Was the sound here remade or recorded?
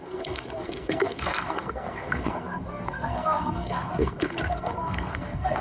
remade